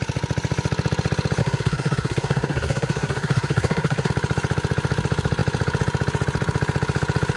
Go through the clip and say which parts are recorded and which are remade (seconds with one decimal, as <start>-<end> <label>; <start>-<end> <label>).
0.0-1.4 recorded; 1.4-4.1 remade; 4.1-7.4 recorded